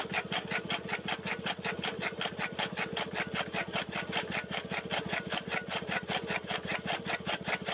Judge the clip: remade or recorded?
recorded